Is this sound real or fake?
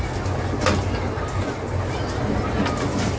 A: real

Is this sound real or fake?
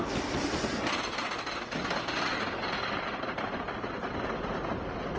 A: real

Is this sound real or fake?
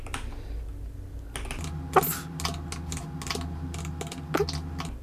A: real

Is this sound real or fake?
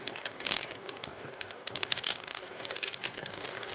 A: fake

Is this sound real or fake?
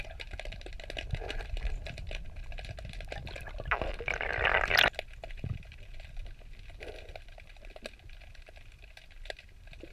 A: real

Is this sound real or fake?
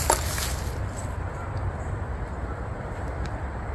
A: real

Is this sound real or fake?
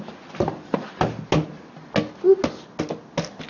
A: real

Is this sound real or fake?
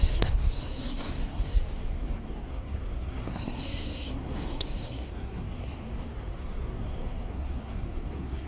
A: fake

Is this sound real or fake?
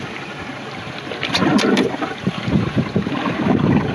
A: fake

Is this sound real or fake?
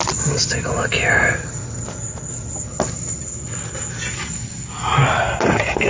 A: real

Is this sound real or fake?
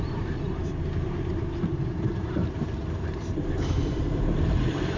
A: fake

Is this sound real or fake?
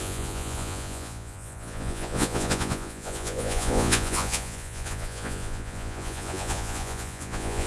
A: fake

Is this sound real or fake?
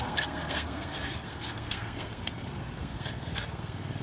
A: fake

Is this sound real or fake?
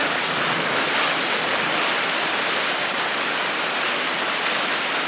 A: real